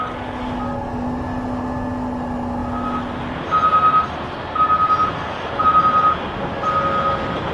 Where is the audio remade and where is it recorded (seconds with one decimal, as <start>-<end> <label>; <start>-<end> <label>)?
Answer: 0.0-7.5 recorded